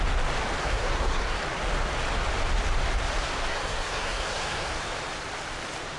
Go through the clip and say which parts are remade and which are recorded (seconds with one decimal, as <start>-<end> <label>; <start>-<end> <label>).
0.0-0.6 recorded; 0.6-1.4 remade; 1.4-3.5 recorded; 3.5-4.7 remade; 4.7-6.0 recorded